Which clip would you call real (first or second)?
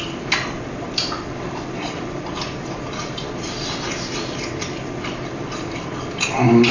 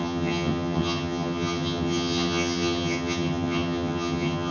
first